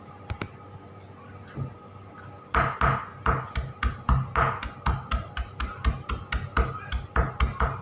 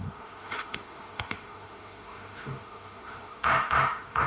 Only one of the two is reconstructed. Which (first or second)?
second